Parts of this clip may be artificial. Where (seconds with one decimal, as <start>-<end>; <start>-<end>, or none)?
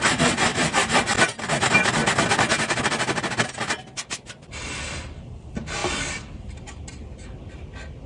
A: none